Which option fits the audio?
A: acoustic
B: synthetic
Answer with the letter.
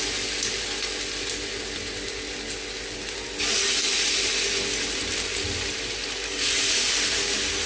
A